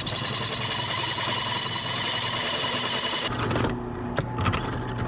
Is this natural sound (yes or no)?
yes